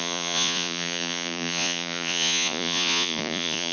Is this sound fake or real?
fake